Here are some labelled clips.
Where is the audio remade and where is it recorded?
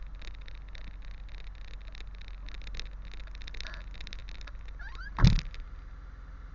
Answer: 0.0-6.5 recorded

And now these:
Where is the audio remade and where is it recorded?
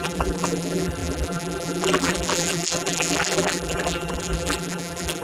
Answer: 0.0-5.2 remade